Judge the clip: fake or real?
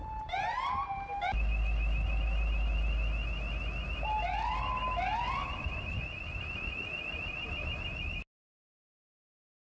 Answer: real